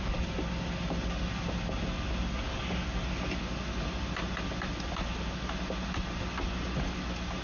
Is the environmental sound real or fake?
real